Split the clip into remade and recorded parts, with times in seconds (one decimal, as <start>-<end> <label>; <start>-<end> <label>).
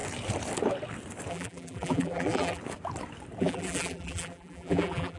0.0-1.3 recorded; 1.3-2.6 remade; 2.6-3.4 recorded; 3.4-5.2 remade